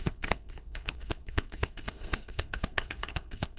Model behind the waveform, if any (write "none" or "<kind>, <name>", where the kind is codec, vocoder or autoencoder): codec, SNAC